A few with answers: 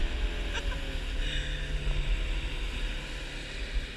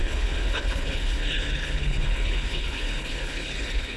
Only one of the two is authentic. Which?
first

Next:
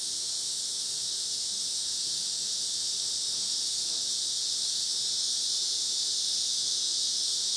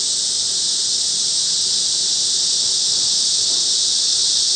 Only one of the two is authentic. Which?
second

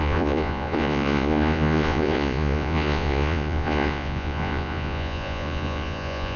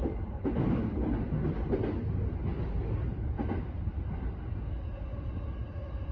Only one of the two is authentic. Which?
second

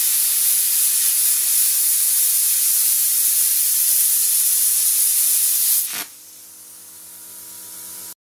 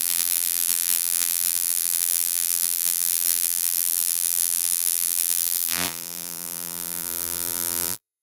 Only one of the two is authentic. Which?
first